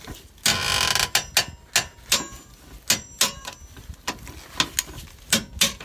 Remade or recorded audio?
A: recorded